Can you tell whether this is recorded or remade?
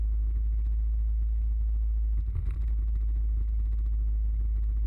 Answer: recorded